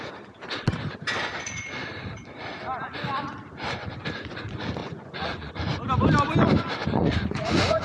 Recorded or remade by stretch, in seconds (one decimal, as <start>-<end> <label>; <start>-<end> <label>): 0.0-4.8 recorded; 4.8-5.5 remade; 5.5-6.8 recorded; 6.8-7.8 remade